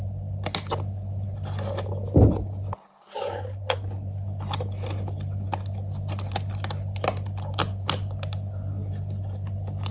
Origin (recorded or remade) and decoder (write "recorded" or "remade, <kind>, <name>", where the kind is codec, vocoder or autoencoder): recorded